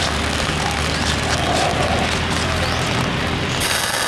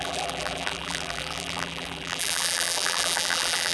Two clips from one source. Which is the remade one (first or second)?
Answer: second